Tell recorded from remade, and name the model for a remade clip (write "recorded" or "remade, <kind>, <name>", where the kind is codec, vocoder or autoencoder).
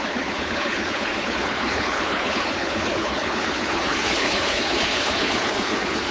remade, codec, HILCodec